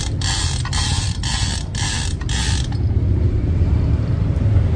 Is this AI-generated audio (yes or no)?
no